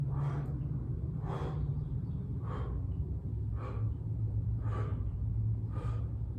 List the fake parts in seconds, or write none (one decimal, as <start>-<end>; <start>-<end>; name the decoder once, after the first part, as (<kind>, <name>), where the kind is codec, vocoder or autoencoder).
none